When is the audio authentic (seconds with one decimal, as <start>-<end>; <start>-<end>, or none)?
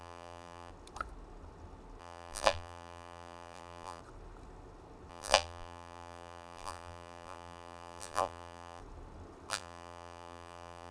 0.7-2.0; 4.0-5.1; 8.8-9.5